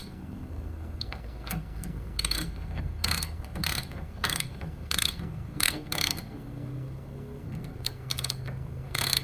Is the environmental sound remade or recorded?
remade